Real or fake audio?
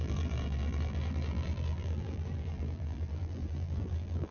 fake